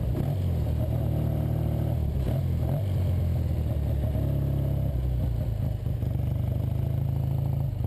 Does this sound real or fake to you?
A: real